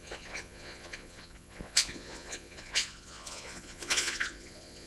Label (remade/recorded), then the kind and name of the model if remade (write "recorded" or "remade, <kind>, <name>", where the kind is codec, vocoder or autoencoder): remade, vocoder, Vocos